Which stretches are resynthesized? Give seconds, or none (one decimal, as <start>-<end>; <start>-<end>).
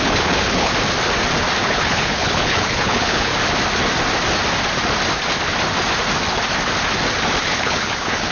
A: 0.0-0.7; 1.6-3.3; 7.4-8.3